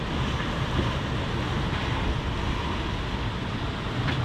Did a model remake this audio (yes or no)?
no